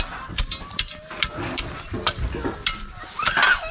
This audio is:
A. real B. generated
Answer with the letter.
A